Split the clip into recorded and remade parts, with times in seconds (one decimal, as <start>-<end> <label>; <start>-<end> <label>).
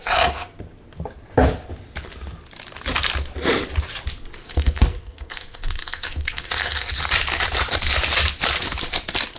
0.0-0.5 remade; 0.5-4.4 recorded; 4.4-6.9 remade; 6.9-9.4 recorded